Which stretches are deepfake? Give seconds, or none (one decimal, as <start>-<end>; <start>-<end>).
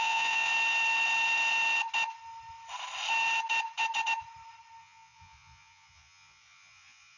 0.0-0.5; 4.8-7.2